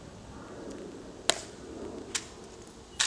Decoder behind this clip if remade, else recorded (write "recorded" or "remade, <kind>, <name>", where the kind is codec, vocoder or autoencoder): recorded